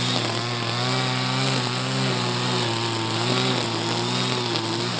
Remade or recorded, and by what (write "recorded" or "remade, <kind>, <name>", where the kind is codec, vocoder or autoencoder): recorded